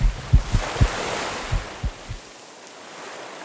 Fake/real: real